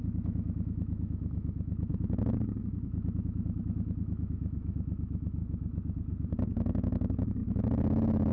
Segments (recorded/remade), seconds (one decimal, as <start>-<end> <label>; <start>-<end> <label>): 0.0-5.4 remade; 5.4-6.3 recorded; 6.3-8.3 remade